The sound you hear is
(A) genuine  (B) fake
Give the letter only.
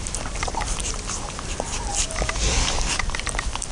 B